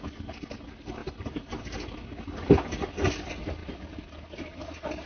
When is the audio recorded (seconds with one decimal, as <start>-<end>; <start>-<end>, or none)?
0.0-1.0; 1.6-5.1